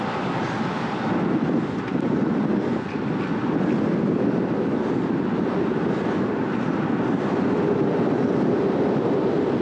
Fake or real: real